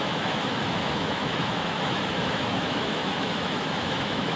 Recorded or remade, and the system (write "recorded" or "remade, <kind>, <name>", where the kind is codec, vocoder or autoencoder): remade, autoencoder, DAC-VAE